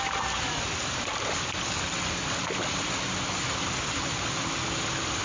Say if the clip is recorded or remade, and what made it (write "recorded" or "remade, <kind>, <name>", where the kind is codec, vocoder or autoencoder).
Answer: recorded